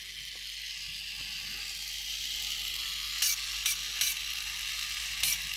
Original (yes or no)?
yes